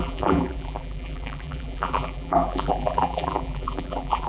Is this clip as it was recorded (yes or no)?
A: no